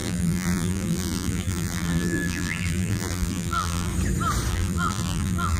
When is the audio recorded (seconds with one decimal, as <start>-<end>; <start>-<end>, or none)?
3.9-4.5